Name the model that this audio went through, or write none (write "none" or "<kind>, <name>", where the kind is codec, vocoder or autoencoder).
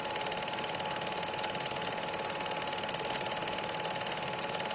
none